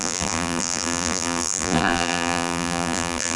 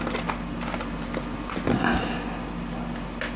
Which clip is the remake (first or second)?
first